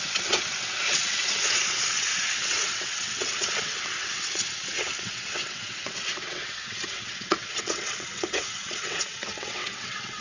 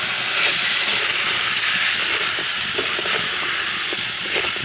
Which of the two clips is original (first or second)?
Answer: second